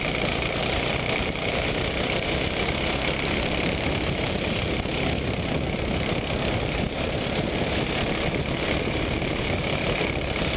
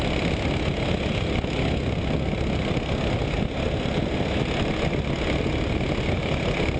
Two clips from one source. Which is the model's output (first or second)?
first